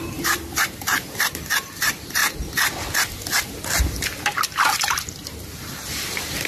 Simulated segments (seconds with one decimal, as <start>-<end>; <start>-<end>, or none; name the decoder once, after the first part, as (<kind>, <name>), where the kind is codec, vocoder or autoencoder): 0.0-2.2 (vocoder, BigVGAN v2); 5.5-6.5